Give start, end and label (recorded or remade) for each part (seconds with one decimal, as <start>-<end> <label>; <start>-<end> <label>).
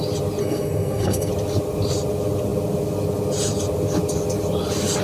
0.0-0.4 recorded; 0.4-1.3 remade; 1.3-5.0 recorded